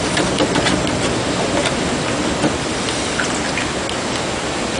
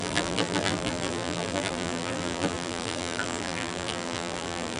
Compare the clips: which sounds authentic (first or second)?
first